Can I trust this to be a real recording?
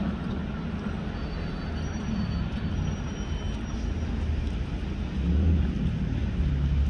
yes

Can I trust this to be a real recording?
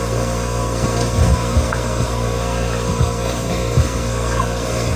no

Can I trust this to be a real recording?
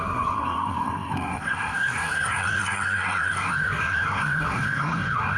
no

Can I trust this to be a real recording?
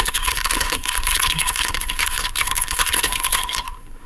no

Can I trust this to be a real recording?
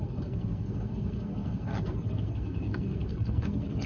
no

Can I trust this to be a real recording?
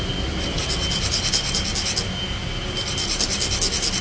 yes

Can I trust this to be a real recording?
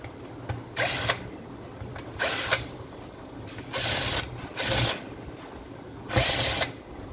yes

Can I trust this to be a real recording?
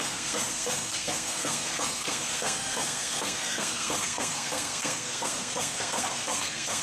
no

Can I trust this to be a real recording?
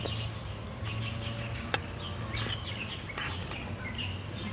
yes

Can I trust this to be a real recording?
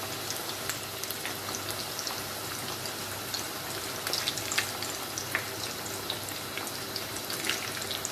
yes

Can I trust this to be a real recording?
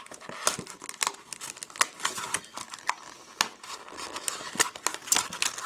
yes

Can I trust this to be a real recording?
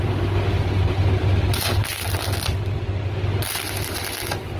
yes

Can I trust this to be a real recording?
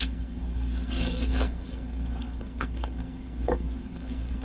no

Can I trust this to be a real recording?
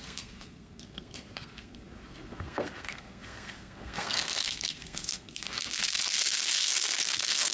no